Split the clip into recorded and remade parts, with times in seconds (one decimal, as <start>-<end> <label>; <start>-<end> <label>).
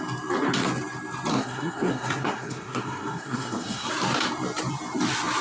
0.0-1.3 recorded; 1.3-3.9 remade; 3.9-5.4 recorded